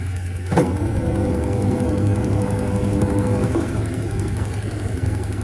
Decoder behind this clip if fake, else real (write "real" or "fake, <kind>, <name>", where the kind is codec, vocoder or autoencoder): fake, codec, SNAC